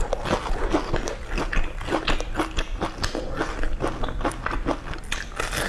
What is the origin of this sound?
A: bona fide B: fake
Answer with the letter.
A